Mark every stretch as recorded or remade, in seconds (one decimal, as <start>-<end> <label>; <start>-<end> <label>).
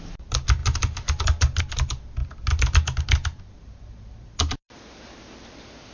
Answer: 0.0-5.9 recorded